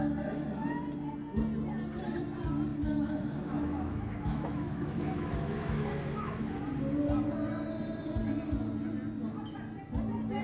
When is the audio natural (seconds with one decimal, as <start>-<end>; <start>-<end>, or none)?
0.0-2.7; 6.6-10.4